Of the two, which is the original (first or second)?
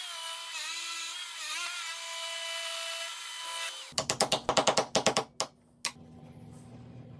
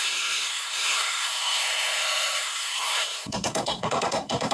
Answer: first